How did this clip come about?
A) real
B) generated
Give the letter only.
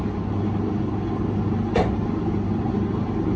A